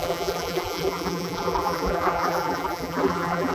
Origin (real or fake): fake